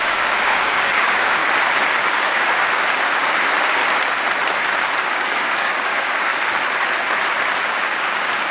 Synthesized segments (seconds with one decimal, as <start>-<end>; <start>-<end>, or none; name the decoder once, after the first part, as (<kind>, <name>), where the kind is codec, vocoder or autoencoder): 0.0-1.4 (codec, DAC); 1.9-3.8; 5.0-6.3; 7.7-8.5